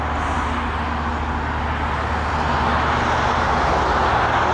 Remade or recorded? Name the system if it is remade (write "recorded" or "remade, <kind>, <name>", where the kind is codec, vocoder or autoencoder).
recorded